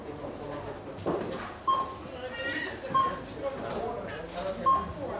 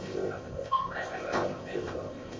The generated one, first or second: second